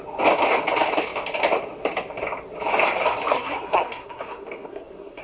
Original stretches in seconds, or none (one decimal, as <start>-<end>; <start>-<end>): 0.0-3.3